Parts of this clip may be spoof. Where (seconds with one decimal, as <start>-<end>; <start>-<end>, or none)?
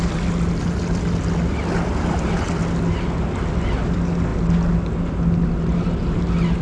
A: none